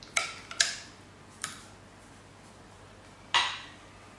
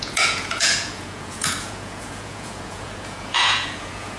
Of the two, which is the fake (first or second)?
second